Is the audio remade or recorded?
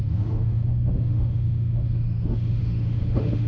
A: remade